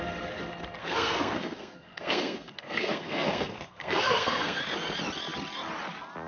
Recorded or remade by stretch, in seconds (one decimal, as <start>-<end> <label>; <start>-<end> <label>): 0.0-0.8 recorded; 0.8-4.6 remade; 4.6-6.3 recorded